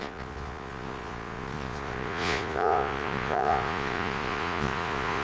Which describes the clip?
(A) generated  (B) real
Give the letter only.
A